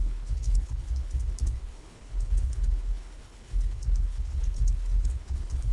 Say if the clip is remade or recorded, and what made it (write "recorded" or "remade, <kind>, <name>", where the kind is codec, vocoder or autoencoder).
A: remade, codec, HILCodec